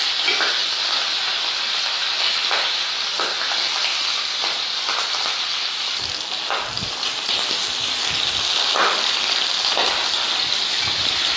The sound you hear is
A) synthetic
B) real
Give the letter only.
B